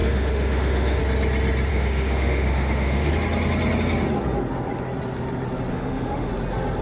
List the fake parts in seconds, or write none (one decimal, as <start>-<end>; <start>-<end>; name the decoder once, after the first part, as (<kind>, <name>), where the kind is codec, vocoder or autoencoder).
0.0-1.0 (autoencoder, DAC-VAE); 1.7-3.1; 5.7-6.3